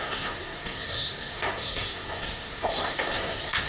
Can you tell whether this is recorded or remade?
remade